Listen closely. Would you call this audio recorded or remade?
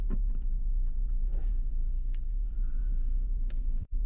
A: remade